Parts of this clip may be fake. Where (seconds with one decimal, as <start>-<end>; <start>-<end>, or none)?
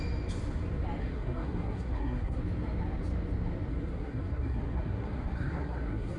1.0-2.4; 3.7-6.2